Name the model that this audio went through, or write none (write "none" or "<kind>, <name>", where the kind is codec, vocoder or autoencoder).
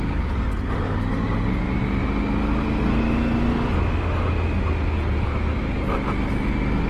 none